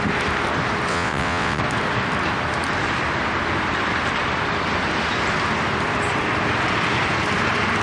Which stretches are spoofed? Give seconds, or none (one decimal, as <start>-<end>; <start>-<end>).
0.9-1.6